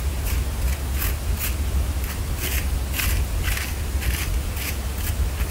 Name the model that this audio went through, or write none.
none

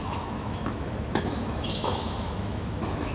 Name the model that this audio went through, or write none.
autoencoder, DAC-VAE